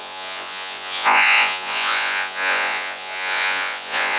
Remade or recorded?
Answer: remade